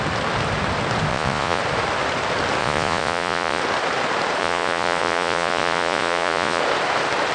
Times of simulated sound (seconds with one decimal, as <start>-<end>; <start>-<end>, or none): 1.1-1.6; 2.6-3.6; 4.4-6.6